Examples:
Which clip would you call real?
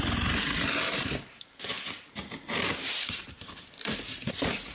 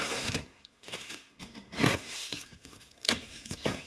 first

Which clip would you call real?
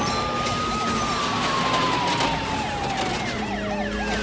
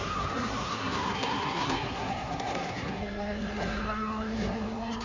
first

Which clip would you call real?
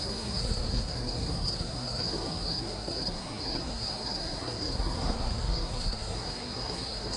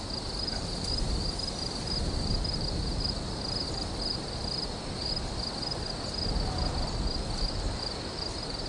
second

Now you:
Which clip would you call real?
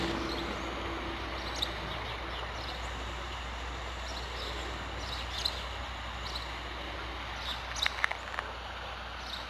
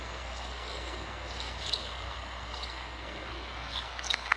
first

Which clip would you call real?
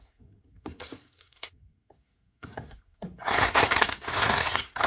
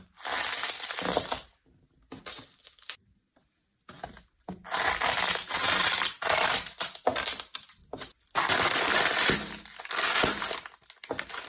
second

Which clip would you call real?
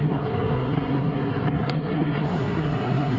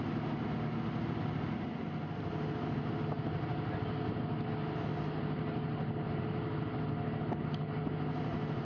second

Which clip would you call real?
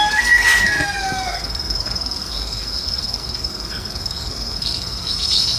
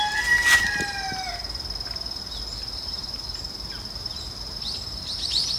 second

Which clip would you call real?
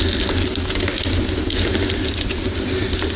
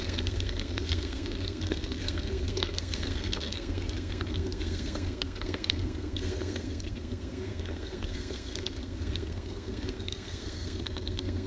first